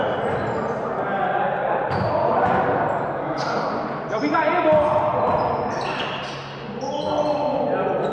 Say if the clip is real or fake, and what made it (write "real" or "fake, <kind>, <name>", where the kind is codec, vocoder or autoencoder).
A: real